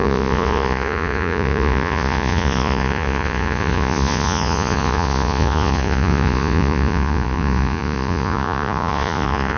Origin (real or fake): fake